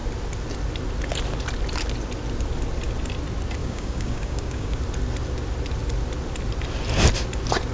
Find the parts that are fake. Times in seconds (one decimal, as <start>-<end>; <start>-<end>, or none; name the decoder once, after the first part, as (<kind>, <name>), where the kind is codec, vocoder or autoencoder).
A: 3.6-4.8 (codec, DAC)